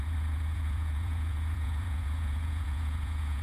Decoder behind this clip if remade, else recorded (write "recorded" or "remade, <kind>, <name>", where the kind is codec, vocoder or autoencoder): remade, vocoder, Vocos